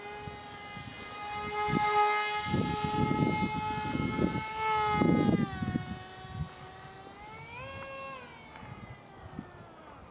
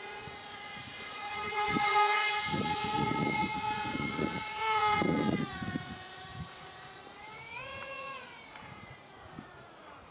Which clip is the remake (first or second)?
second